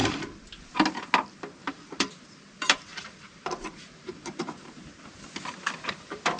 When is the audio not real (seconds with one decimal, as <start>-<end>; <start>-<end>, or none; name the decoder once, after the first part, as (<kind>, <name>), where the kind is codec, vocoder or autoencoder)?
1.7-6.4 (vocoder, BigVGAN v2)